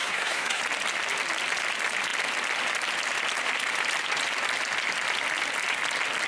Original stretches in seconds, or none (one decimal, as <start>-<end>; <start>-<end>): 0.6-6.3

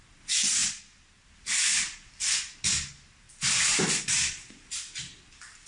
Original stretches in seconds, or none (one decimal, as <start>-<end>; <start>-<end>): 0.0-5.7

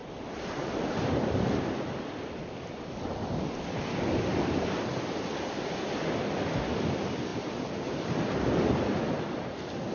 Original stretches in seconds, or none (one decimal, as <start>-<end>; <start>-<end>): 1.6-7.3; 7.9-9.9

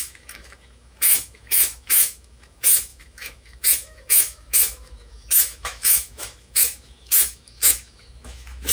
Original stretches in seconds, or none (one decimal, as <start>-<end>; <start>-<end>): none